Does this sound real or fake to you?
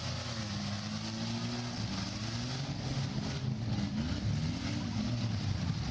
real